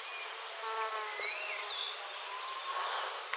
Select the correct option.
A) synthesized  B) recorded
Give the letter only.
B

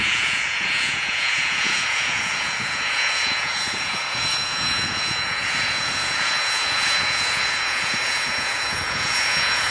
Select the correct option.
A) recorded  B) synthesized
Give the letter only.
B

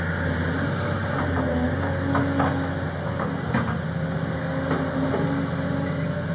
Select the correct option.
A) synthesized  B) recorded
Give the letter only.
B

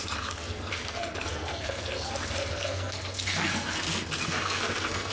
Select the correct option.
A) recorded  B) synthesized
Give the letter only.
B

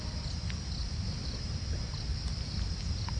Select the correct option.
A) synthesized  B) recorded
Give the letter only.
B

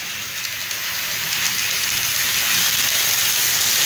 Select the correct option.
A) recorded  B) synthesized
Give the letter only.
A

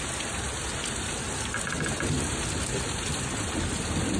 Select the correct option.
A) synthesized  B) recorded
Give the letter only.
B